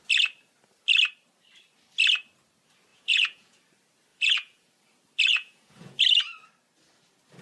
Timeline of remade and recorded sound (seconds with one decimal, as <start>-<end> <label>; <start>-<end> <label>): 0.0-2.9 recorded; 2.9-3.6 remade; 3.6-4.1 recorded; 4.1-4.7 remade; 4.7-5.3 recorded; 5.3-6.0 remade; 6.0-7.4 recorded